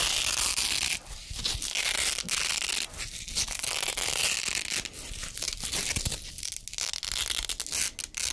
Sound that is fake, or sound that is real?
real